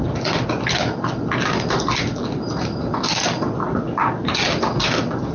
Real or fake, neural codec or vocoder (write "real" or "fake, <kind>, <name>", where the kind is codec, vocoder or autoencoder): real